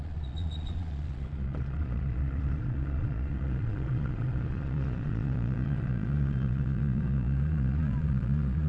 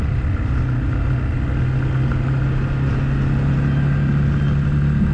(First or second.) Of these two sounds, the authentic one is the second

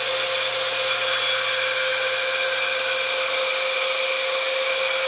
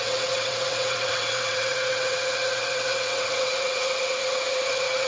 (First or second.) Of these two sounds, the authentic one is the first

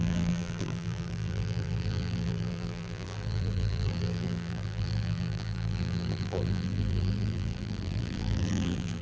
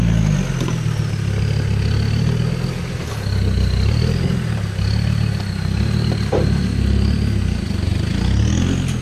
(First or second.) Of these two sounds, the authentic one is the second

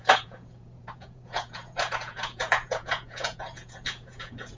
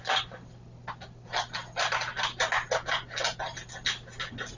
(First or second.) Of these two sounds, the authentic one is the second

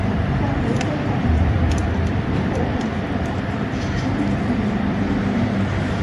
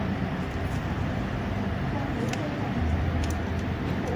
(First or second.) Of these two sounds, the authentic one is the second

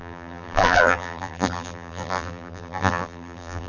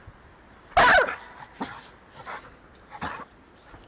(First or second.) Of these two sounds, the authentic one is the second